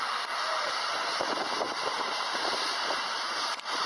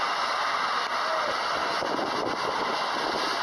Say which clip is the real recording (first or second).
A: second